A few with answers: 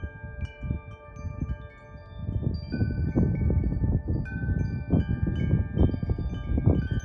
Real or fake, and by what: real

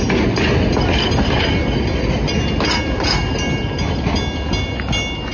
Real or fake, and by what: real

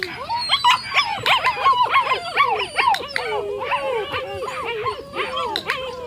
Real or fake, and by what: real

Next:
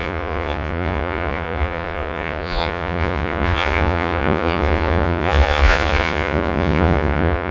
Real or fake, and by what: fake, vocoder, Vocos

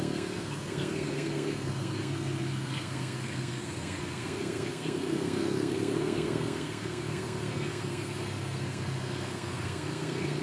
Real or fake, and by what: fake, codec, SNAC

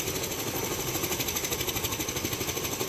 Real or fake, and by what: real